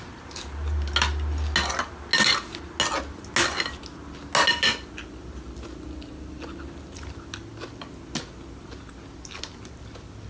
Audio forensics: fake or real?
real